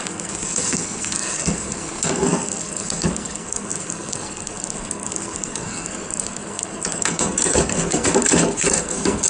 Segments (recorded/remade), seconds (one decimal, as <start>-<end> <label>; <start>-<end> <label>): 0.0-9.3 remade